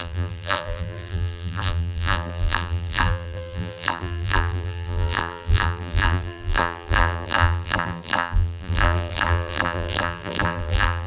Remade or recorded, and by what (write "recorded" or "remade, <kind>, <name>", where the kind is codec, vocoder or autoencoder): remade, vocoder, BigVGAN v2